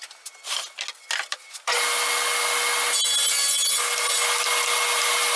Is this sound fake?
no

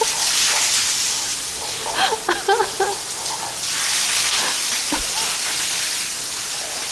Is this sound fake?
no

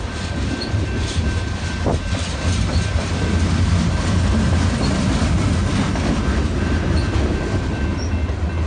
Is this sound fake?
no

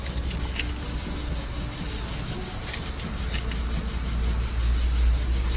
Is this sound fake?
no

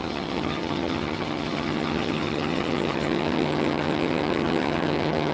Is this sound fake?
yes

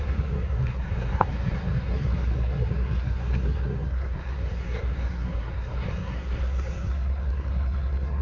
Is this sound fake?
yes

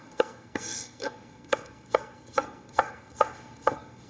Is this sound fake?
yes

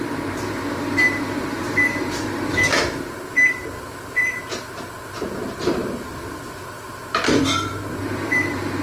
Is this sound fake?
yes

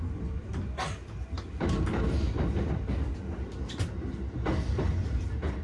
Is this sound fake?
no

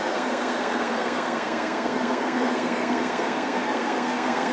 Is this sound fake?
yes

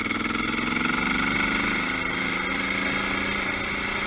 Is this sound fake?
no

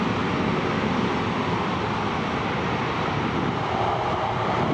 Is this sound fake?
no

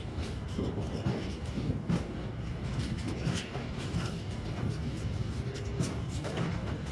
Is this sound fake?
yes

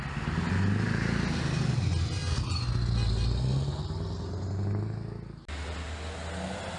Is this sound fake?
no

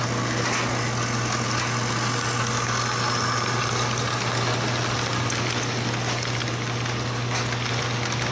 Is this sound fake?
no